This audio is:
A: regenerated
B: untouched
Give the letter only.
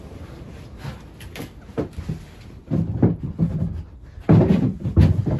B